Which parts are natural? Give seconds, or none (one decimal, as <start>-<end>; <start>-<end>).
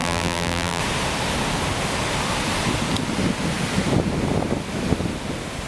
0.8-5.7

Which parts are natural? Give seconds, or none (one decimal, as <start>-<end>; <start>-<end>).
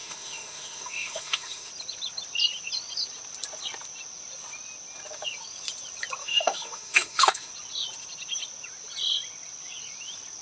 1.7-6.2; 7.5-10.4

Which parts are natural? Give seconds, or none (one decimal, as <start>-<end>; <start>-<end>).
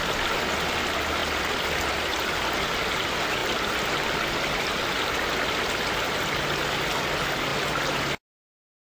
0.0-8.8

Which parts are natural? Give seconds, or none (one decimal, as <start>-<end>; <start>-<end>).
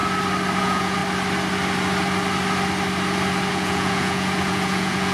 0.0-0.6; 1.0-3.5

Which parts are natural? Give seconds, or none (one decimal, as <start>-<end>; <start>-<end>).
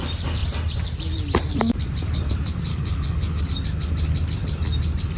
0.0-2.7; 3.4-5.2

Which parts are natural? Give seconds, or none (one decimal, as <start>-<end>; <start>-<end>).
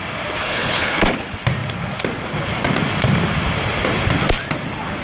0.0-0.4; 1.0-5.0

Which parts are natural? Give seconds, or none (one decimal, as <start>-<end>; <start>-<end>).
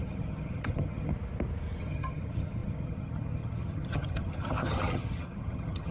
1.1-1.8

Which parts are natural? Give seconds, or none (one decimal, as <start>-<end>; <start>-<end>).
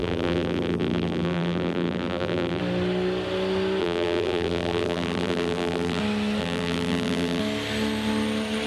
2.6-3.8; 6.0-6.4; 7.4-8.7